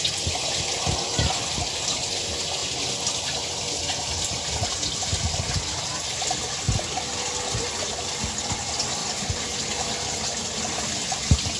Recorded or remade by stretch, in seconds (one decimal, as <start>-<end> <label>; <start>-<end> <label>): 0.0-11.6 recorded